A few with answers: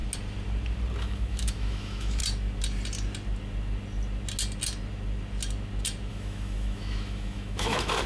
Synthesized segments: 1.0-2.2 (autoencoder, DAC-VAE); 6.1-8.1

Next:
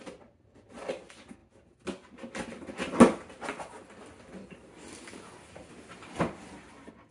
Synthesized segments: 0.0-1.4 (vocoder, BigVGAN v2); 5.7-7.1

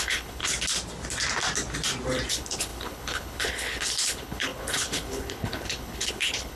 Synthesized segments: 0.0-0.4 (codec, HILCodec); 2.3-6.6

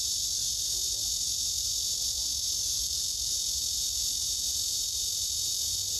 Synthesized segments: 0.0-6.0 (vocoder, BigVGAN v2)

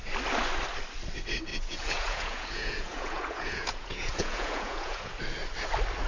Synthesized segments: 1.5-5.2 (vocoder, Vocos)